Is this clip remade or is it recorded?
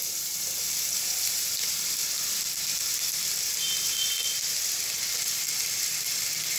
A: remade